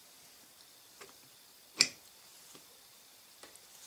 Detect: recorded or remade recorded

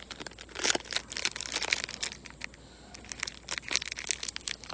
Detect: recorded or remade recorded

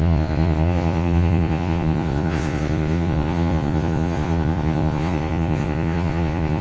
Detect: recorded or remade remade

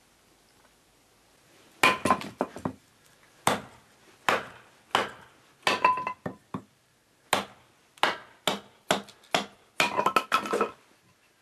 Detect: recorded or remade recorded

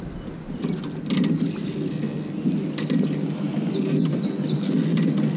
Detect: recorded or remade recorded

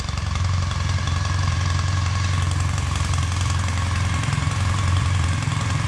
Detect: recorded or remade remade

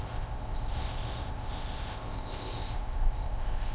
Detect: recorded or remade remade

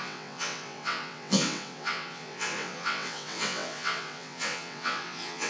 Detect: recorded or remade remade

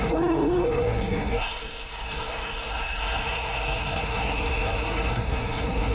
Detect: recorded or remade remade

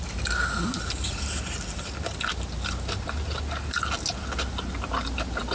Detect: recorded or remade recorded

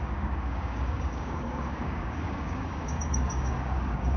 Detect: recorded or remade remade